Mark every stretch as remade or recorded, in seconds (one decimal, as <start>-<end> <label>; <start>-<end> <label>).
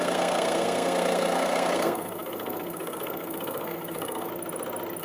0.0-4.3 remade; 4.3-5.0 recorded